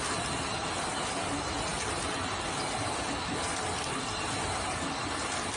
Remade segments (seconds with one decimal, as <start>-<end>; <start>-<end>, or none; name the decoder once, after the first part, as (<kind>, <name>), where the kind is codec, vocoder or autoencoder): none